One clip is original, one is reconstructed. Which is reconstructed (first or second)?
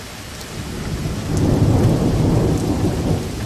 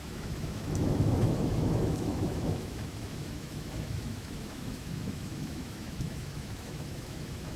second